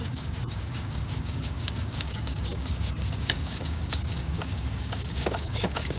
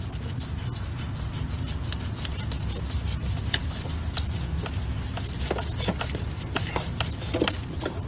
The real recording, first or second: second